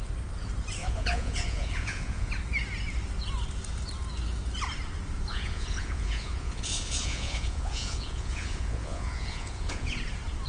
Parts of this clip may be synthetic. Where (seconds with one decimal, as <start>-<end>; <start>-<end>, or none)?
0.8-2.3; 5.3-10.0